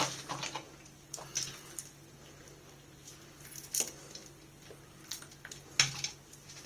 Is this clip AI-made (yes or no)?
no